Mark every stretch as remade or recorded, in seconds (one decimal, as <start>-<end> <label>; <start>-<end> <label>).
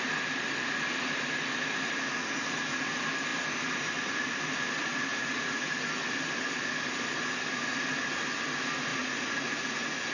0.0-5.1 recorded; 5.1-5.7 remade; 5.7-8.9 recorded; 8.9-10.1 remade